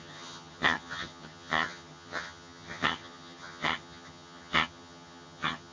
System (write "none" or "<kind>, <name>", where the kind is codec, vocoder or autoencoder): vocoder, HiFi-GAN